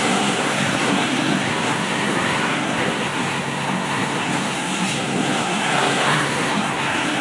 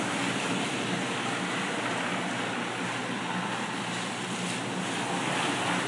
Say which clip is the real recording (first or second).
second